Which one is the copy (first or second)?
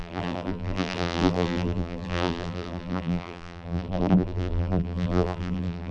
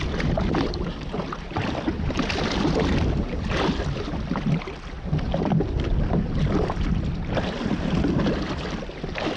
first